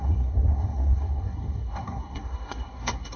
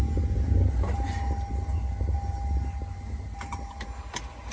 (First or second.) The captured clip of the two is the second